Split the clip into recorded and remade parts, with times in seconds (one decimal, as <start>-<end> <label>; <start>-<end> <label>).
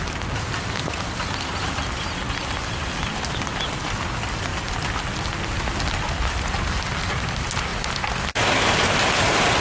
0.0-9.6 recorded